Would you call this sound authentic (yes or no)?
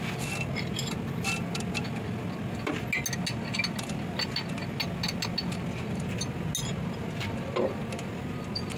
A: yes